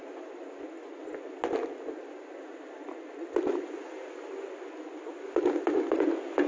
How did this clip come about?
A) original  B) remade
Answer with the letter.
A